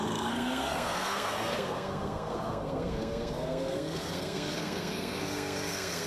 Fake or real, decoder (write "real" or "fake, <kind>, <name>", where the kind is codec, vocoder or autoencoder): fake, codec, SNAC